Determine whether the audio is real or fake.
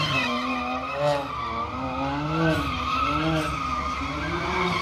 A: real